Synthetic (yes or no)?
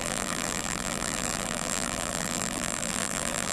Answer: yes